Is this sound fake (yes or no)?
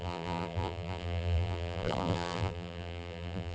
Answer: yes